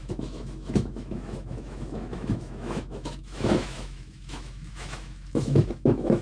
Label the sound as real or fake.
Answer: fake